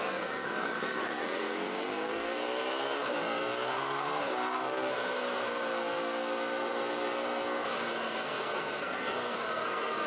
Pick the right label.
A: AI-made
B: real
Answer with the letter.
A